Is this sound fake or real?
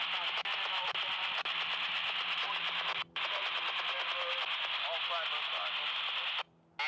real